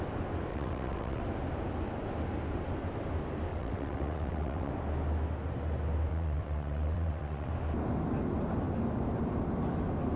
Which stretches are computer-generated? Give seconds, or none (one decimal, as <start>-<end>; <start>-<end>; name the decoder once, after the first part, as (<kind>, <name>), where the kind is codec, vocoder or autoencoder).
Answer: 0.5-1.2 (vocoder, WaveNeXt); 3.5-4.7; 6.1-7.5